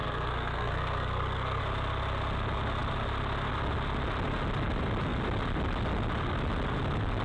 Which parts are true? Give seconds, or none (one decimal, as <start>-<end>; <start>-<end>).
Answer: 1.6-7.2